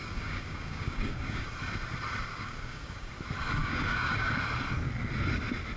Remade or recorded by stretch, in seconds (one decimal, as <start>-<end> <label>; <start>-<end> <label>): 0.0-1.4 remade; 1.4-2.3 recorded; 2.3-3.1 remade; 3.1-3.6 recorded; 3.6-4.3 remade; 4.3-5.8 recorded